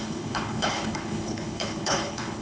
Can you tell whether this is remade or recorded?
remade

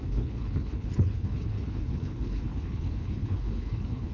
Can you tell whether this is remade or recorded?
remade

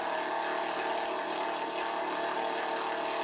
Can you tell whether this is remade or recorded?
recorded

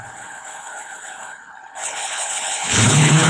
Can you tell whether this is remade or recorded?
remade